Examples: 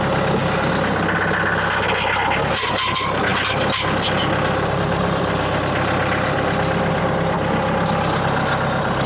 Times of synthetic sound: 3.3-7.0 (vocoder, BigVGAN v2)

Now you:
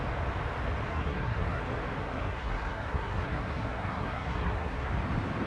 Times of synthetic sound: 0.9-1.6 (codec, SNAC); 2.0-4.9

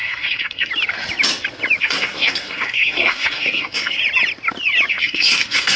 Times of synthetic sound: 0.0-0.7 (codec, SNAC); 1.8-4.0; 4.9-5.8

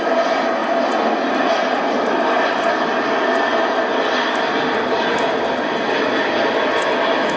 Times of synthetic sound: none

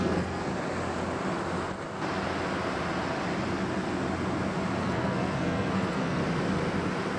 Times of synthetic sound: 0.0-0.5 (codec, SNAC); 4.8-6.2

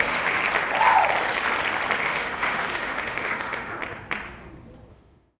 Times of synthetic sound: 0.0-0.4 (autoencoder, DAC-VAE); 2.0-3.8; 4.9-5.4